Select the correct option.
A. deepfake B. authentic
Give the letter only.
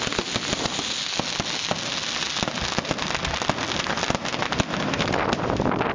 B